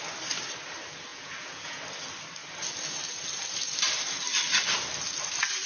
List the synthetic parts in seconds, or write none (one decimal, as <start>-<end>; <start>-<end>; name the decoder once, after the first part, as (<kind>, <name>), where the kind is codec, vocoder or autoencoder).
1.1-1.8 (vocoder, Vocos)